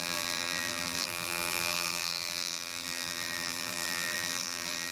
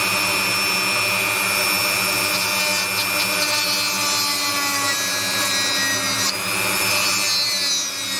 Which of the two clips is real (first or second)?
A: second